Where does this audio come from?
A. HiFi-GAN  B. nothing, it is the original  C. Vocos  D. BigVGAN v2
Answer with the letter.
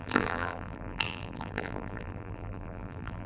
D